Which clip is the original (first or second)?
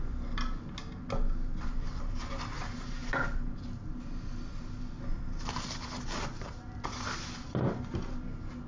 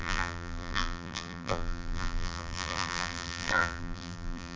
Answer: first